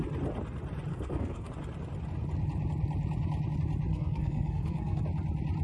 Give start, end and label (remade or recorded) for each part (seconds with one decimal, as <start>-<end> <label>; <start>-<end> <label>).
0.0-0.9 recorded; 0.9-1.5 remade; 1.5-3.9 recorded; 3.9-5.0 remade; 5.0-5.6 recorded